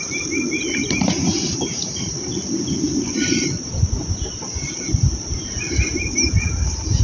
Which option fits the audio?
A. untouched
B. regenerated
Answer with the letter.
B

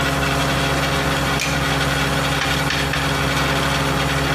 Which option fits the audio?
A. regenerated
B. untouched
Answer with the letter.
B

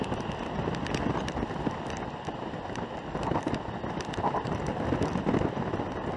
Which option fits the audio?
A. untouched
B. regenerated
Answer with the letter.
A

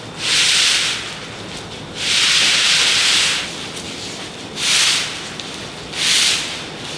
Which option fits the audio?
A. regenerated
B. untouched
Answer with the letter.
B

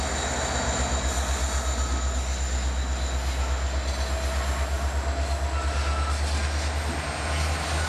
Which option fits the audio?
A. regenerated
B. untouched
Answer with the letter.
B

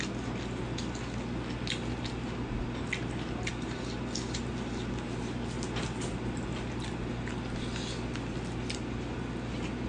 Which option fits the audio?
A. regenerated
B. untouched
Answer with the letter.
B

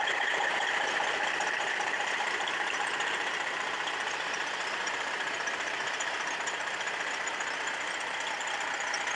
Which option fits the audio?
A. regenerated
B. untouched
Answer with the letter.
A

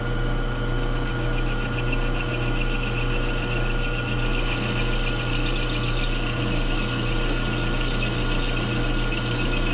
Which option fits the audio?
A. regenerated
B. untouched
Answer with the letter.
B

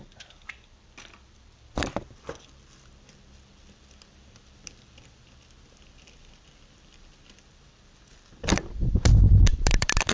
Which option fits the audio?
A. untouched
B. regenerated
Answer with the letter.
B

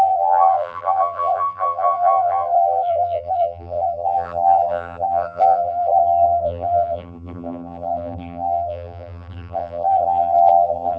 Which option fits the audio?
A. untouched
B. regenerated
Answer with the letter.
B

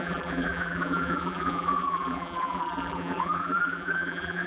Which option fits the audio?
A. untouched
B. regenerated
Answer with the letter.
B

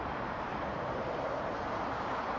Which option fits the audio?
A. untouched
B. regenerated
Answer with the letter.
B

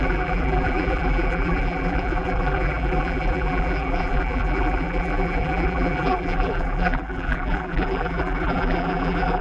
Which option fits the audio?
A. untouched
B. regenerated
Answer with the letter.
B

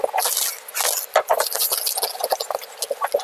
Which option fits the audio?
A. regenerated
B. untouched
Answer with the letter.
B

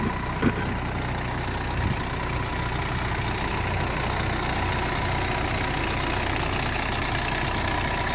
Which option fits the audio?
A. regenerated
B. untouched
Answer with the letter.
B